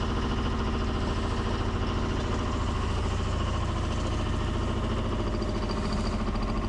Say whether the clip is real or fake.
real